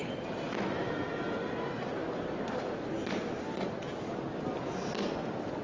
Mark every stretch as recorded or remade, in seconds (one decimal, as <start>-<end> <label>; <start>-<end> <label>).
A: 0.0-5.6 recorded